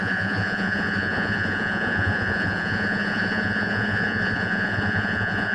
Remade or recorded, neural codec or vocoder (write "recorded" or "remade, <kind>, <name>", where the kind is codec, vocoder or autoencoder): remade, vocoder, Vocos